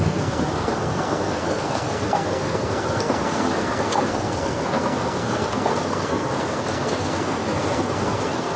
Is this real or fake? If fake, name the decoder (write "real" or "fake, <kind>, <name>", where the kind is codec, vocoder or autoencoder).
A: fake, codec, SNAC